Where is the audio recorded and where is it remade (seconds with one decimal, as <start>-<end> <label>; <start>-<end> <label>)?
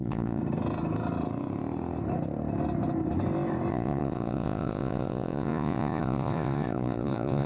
0.0-0.4 remade; 0.4-3.7 recorded; 3.7-7.5 remade